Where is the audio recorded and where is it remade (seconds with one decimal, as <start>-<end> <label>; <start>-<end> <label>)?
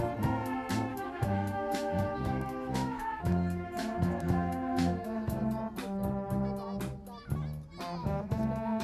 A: 0.0-0.9 recorded; 0.9-5.4 remade; 5.4-8.0 recorded; 8.0-8.8 remade